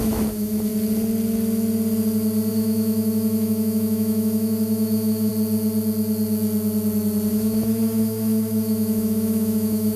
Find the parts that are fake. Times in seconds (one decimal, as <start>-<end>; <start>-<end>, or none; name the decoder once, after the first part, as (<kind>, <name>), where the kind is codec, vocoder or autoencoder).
0.0-0.7 (autoencoder, DAC-VAE); 2.5-5.3; 7.3-10.0